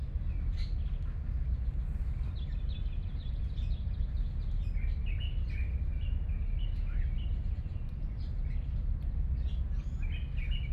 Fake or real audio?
real